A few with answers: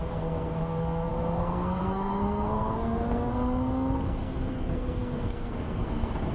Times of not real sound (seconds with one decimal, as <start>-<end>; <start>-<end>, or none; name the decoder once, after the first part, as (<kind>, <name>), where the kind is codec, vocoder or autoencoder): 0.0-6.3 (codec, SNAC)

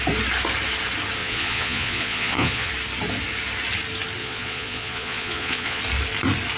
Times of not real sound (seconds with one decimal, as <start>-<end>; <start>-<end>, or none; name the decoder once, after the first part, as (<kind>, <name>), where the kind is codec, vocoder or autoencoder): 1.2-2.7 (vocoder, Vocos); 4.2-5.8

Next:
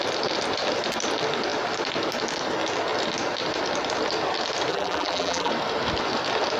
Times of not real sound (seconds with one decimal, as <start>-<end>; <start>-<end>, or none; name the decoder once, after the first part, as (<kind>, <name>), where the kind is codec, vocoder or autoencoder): 4.7-5.5 (vocoder, BigVGAN v2)

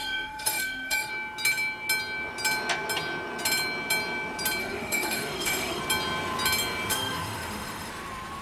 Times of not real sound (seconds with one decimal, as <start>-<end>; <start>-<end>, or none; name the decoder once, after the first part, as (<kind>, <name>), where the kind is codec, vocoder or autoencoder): 0.0-1.1 (autoencoder, DAC-VAE); 4.6-5.8; 6.9-7.9